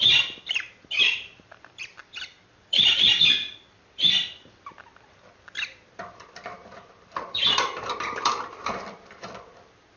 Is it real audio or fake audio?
fake